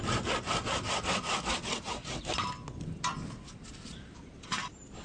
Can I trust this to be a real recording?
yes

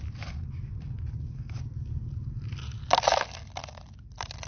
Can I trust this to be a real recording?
yes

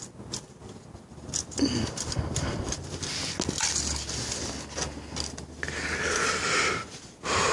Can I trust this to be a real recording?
yes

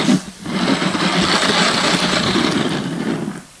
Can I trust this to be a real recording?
yes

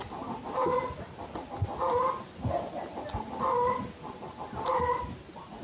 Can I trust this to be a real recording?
yes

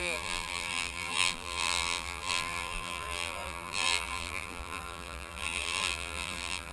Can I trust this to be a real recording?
no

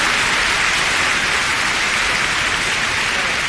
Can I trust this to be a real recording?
yes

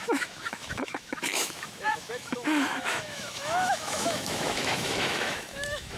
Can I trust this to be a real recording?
no